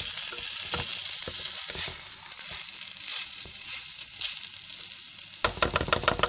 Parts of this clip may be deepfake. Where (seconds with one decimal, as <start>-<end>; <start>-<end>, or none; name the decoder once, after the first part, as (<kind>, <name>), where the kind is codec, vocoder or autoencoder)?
3.1-4.2 (vocoder, Vocos)